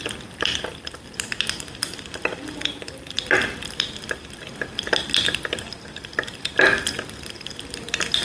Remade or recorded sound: recorded